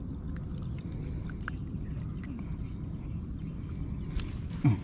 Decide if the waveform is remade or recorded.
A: recorded